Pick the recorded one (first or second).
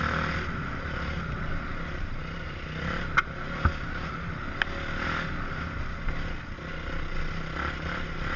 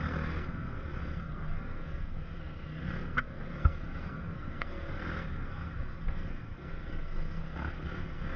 first